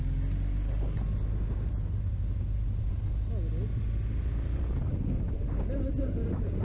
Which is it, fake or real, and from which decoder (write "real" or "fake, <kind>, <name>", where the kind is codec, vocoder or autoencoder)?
real